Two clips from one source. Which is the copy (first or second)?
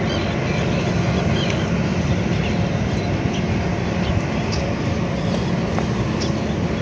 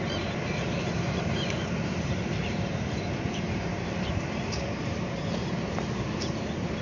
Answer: second